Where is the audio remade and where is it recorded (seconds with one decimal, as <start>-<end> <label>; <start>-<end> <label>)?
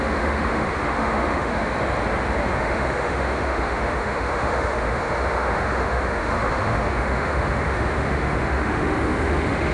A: 0.0-1.7 remade; 1.7-2.4 recorded; 2.4-9.7 remade